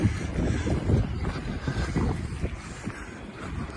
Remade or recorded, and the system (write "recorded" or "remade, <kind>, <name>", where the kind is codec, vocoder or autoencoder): recorded